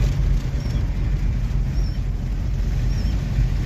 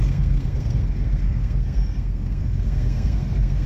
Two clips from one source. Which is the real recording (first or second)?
first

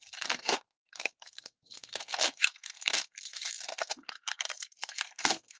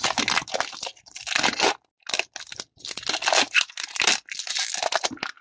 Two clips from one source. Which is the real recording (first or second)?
second